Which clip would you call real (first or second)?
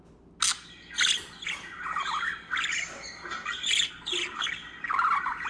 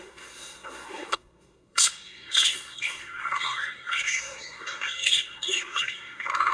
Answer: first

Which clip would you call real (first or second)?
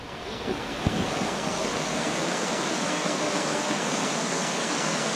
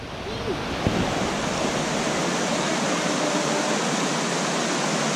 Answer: second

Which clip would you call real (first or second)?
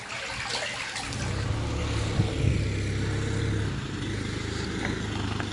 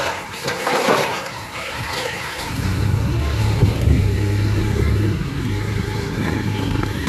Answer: first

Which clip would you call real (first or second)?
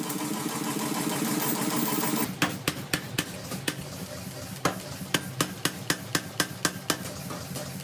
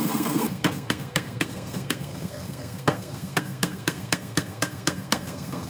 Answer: first